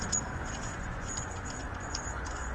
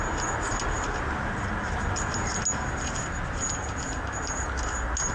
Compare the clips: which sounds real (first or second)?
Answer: second